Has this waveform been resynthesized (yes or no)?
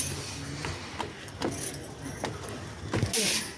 no